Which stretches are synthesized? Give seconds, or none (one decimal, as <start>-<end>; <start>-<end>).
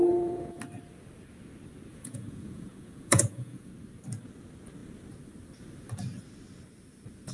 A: 0.0-0.6; 1.9-3.7